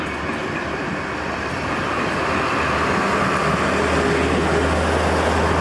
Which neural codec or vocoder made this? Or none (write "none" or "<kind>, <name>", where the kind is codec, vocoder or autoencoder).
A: none